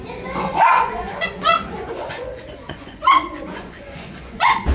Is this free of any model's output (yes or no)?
no